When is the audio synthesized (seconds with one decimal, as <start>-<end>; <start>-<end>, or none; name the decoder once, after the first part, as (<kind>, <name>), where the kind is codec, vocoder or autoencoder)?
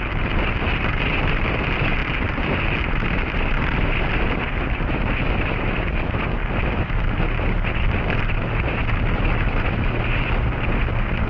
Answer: none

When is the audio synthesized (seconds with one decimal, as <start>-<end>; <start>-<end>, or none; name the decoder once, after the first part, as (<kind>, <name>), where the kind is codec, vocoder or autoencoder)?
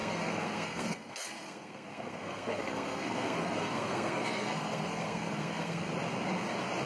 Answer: 0.0-5.9 (codec, SNAC)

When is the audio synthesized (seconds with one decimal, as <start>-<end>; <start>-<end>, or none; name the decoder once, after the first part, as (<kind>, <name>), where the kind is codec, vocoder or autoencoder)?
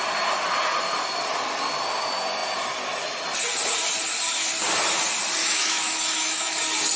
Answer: 5.4-6.6 (autoencoder, DAC-VAE)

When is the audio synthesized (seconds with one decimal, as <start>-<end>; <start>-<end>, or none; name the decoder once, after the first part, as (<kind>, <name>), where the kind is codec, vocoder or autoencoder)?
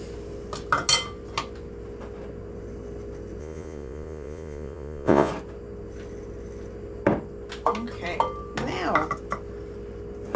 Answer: 3.4-5.3 (vocoder, Vocos)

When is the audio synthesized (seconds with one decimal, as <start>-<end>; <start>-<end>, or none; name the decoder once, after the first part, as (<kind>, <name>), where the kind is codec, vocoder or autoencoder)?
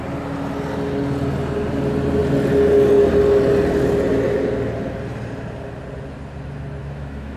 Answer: 6.8-7.4 (autoencoder, DAC-VAE)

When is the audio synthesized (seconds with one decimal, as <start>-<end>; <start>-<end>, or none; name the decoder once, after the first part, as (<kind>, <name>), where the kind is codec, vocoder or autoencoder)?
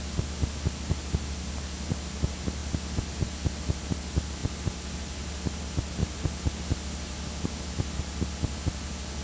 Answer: none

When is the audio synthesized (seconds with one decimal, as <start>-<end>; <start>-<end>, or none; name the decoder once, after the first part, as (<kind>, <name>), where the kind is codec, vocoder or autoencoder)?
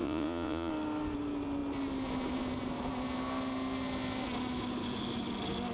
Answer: 0.0-0.7 (vocoder, Vocos)